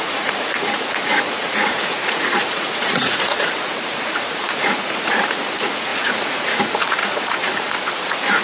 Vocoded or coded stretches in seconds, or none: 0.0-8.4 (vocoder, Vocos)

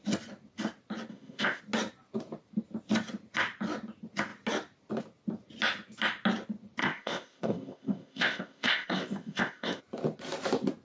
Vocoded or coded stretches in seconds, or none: 1.1-1.6 (codec, ZipCodec); 6.8-9.8

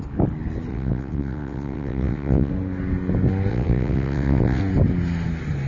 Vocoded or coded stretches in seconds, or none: 0.7-2.5 (vocoder, WaveNeXt); 3.5-4.6

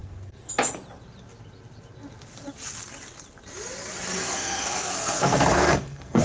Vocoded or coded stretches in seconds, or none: 0.0-0.5 (codec, SNAC); 4.2-6.2

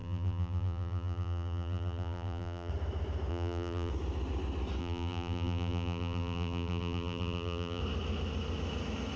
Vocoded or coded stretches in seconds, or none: 0.0-2.7 (vocoder, BigVGAN v2); 3.3-3.9; 4.8-7.8

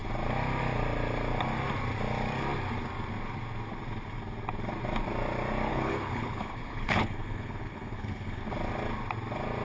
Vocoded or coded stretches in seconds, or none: 5.7-8.4 (codec, HILCodec)

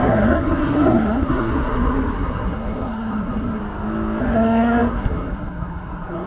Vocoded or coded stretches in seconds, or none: 0.0-3.6 (codec, SNAC); 4.2-6.3

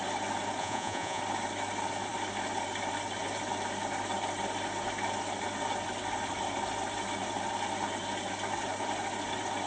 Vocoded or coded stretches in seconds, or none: 0.6-1.2 (vocoder, Vocos)